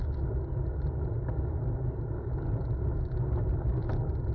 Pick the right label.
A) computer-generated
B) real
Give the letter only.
B